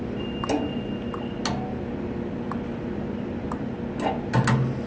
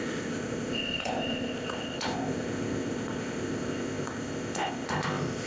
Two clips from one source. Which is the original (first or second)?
first